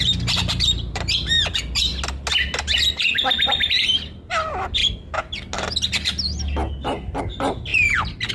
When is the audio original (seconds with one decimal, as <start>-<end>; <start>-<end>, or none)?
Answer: 1.9-2.6; 4.8-7.2; 7.7-8.3